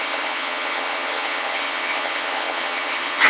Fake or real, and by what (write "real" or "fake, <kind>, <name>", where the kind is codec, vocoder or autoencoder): fake, vocoder, HiFi-GAN